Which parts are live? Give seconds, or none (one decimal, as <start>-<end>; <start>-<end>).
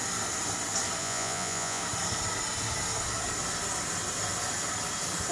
0.0-1.0; 1.8-5.3